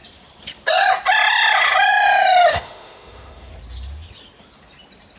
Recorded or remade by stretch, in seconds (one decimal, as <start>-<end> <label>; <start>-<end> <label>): 0.0-2.5 recorded; 2.5-3.5 remade; 3.5-5.2 recorded